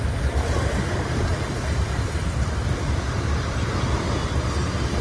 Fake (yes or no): yes